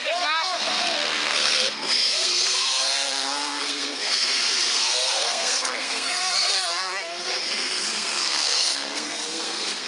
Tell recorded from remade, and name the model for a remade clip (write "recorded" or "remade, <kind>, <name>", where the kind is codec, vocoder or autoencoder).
remade, codec, SNAC